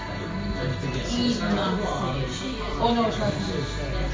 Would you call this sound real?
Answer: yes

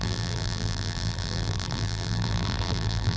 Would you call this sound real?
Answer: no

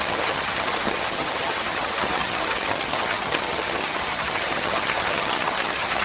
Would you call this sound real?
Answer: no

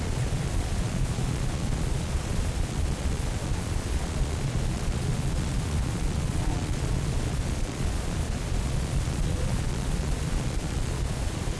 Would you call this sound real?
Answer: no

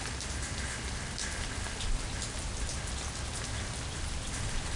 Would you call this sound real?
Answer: yes